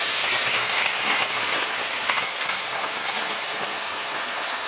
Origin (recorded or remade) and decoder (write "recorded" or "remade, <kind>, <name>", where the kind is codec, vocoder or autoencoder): remade, codec, SNAC